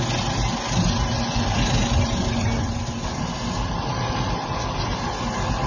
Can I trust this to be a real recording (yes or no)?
yes